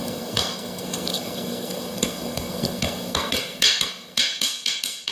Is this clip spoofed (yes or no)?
yes